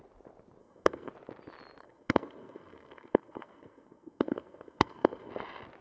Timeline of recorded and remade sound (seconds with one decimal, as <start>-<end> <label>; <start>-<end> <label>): 0.0-0.6 recorded; 0.6-1.1 remade; 1.1-1.8 recorded; 1.8-5.3 remade; 5.3-5.8 recorded